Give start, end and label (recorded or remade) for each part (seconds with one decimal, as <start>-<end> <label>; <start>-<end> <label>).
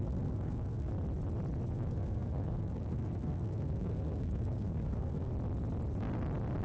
0.0-0.9 remade; 0.9-1.7 recorded; 1.7-5.3 remade; 5.3-6.6 recorded